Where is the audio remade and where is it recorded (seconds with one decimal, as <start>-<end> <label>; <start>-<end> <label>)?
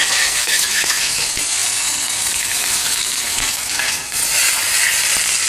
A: 0.0-4.2 remade; 4.2-5.5 recorded